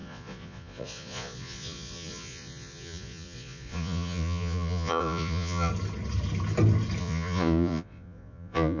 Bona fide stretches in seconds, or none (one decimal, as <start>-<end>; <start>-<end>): 5.7-7.0